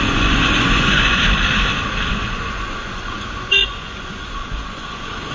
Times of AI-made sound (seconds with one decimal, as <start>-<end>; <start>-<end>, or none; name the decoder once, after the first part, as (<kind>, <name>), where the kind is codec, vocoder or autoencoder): 0.0-1.2 (vocoder, Vocos); 2.1-5.3